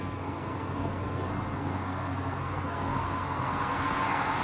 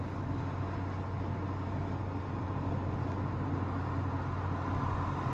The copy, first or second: first